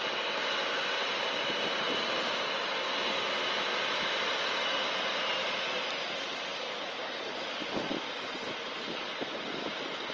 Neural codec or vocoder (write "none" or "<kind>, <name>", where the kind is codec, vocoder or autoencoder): none